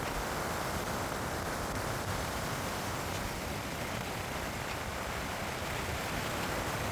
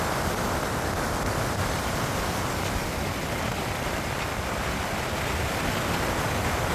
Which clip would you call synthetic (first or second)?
first